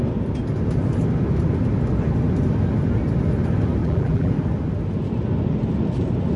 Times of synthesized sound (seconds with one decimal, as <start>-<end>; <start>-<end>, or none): 3.8-4.3